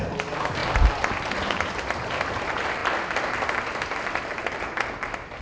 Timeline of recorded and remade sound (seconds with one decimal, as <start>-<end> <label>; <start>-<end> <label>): 0.0-5.4 recorded

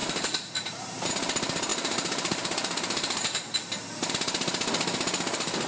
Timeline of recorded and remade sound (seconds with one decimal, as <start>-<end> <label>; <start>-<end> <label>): 0.0-1.1 remade; 1.1-1.7 recorded; 1.7-4.1 remade; 4.1-5.7 recorded

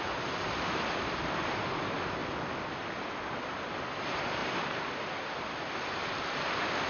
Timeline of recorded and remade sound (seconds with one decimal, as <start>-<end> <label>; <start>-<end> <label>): 0.0-2.2 remade; 2.2-3.9 recorded; 3.9-4.4 remade; 4.4-6.9 recorded

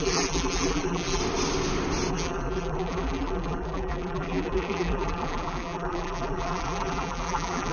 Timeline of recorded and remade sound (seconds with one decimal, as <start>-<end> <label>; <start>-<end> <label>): 0.0-1.2 remade; 1.2-2.1 recorded; 2.1-7.7 remade

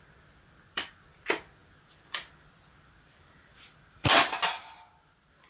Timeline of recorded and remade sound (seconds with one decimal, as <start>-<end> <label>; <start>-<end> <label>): 0.0-5.5 remade